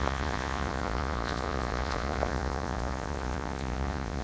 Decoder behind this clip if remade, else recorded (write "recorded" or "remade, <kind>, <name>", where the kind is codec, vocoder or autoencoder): remade, vocoder, Vocos